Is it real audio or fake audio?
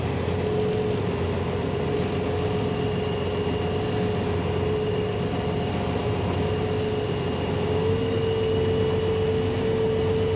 real